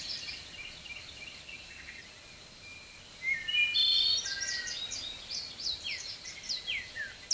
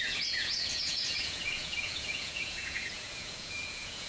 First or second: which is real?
first